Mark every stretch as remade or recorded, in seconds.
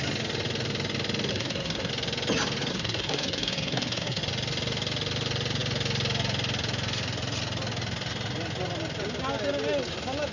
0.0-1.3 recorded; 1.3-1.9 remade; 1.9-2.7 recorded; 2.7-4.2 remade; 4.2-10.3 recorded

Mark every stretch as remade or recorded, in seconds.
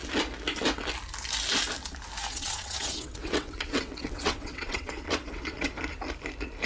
0.0-2.3 recorded; 2.3-5.7 remade; 5.7-6.7 recorded